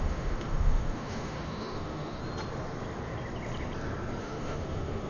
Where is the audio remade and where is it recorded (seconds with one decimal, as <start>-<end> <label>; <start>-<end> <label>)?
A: 0.0-2.2 remade; 2.2-4.2 recorded; 4.2-5.1 remade